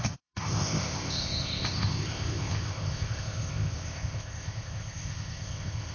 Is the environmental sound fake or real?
fake